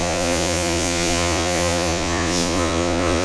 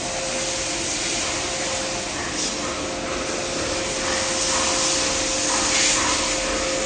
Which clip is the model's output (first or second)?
first